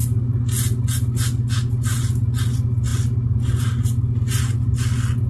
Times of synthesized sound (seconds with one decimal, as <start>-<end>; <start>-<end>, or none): none